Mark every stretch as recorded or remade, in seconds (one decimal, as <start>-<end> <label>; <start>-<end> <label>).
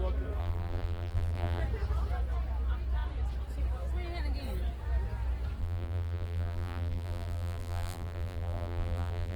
0.0-0.4 recorded; 0.4-1.6 remade; 1.6-5.6 recorded; 5.6-9.4 remade